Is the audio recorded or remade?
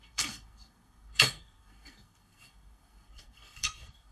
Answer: remade